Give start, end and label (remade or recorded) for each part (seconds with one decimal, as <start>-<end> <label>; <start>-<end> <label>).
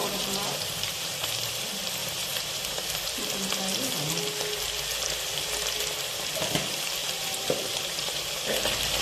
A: 0.0-1.3 remade; 1.3-2.0 recorded; 2.0-3.2 remade; 3.2-7.0 recorded; 7.0-8.2 remade; 8.2-9.0 recorded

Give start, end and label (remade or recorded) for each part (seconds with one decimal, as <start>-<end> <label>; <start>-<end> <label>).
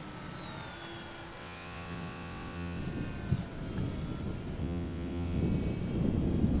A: 0.0-1.4 recorded; 1.4-2.8 remade; 2.8-4.6 recorded; 4.6-5.4 remade; 5.4-6.6 recorded